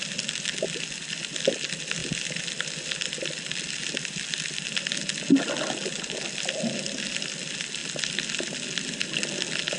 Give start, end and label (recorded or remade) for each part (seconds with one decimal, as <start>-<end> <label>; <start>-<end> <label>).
0.0-9.8 recorded